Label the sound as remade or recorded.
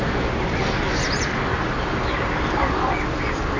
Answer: recorded